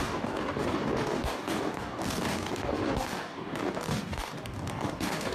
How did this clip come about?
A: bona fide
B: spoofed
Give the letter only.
B